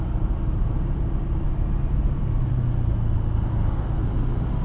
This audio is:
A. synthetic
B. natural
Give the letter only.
B